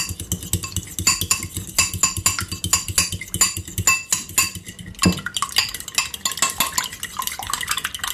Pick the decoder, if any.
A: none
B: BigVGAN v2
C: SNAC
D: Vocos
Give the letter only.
A